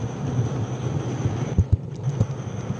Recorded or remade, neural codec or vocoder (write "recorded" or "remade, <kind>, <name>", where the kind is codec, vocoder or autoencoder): recorded